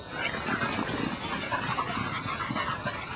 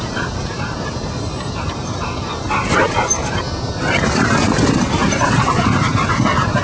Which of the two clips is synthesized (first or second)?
second